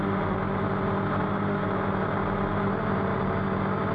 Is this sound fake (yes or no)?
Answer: no